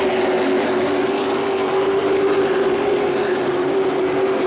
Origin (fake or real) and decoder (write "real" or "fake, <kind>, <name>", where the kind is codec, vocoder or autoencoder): real